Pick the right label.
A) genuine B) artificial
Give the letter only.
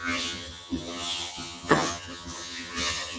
B